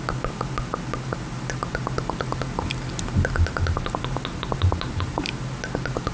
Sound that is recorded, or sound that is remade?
recorded